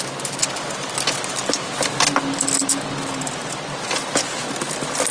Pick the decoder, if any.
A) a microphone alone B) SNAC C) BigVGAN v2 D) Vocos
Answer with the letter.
A